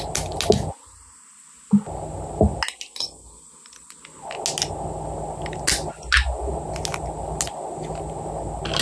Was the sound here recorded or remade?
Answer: recorded